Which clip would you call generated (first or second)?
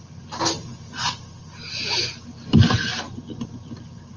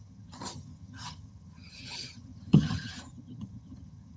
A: second